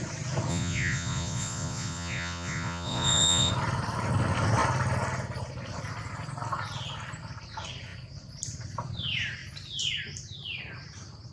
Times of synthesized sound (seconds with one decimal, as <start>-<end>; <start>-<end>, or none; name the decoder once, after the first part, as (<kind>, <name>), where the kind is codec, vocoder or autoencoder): 0.5-3.5 (vocoder, Vocos)